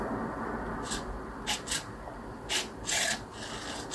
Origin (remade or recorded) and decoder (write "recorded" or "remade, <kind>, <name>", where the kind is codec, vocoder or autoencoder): recorded